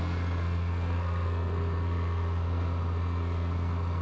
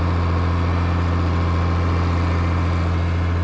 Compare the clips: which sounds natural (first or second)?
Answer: second